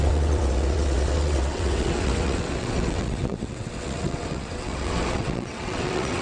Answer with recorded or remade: remade